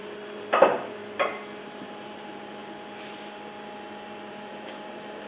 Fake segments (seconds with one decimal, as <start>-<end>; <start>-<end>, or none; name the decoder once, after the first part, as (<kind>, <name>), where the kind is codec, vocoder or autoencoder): 0.0-1.0 (vocoder, BigVGAN v2); 1.6-2.6; 4.3-5.3